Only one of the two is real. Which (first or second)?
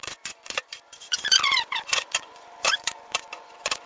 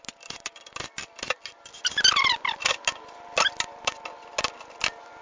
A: second